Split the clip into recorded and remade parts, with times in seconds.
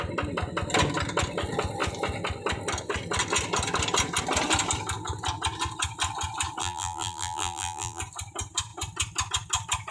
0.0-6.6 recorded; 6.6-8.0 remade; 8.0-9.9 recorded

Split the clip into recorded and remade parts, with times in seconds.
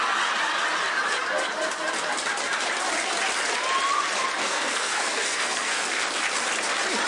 0.0-4.4 recorded; 4.4-6.0 remade; 6.0-7.1 recorded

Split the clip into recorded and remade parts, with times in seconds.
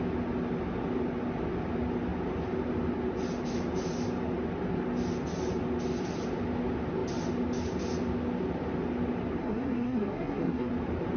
0.0-9.4 recorded; 9.4-10.7 remade; 10.7-11.2 recorded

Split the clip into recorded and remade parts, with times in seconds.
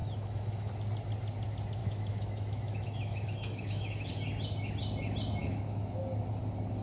0.0-0.7 remade; 0.7-1.8 recorded; 1.8-4.1 remade; 4.1-5.4 recorded; 5.4-6.0 remade; 6.0-6.8 recorded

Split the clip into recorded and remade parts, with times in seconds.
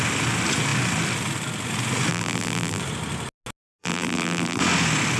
0.0-2.1 recorded; 2.1-2.8 remade; 2.8-3.8 recorded; 3.8-4.6 remade; 4.6-5.2 recorded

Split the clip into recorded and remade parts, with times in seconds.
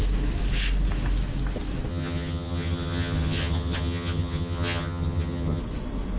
0.0-1.9 recorded; 1.9-5.6 remade; 5.6-6.2 recorded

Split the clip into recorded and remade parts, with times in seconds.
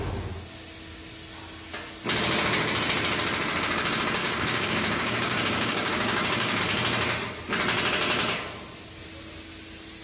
0.0-4.2 recorded; 4.2-6.6 remade; 6.6-10.0 recorded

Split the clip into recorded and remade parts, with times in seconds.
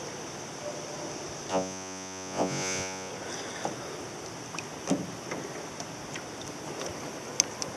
0.0-1.5 recorded; 1.5-3.1 remade; 3.1-7.8 recorded